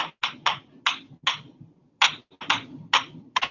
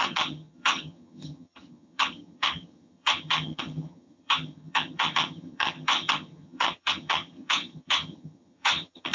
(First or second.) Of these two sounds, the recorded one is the first